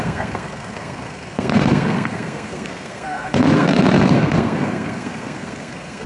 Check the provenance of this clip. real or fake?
fake